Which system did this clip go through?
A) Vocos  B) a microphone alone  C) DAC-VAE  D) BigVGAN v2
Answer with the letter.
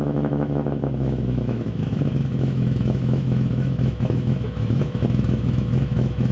C